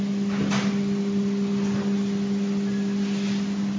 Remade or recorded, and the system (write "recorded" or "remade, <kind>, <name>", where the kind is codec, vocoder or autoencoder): recorded